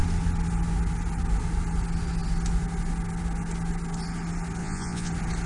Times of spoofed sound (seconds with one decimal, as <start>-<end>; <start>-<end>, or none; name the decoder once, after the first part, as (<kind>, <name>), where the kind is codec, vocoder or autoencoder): 4.6-5.1 (vocoder, Vocos)